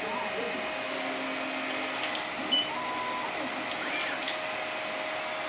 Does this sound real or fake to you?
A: real